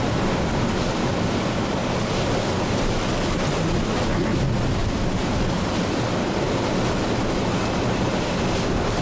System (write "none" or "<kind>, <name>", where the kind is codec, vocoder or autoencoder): none